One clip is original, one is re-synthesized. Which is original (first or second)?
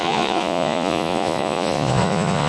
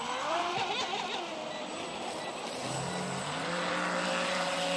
second